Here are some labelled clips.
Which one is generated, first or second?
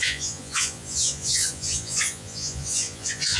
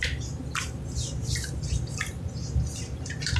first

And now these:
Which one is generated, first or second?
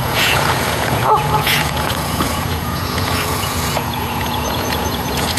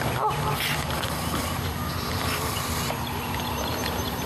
first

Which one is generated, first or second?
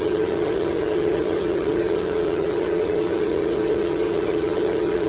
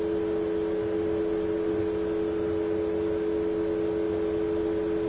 first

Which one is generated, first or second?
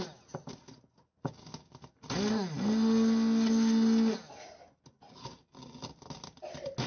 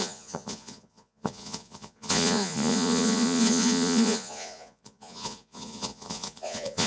second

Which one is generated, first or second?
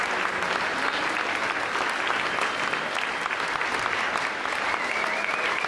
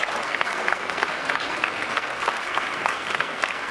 second